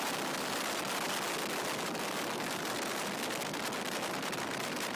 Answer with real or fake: real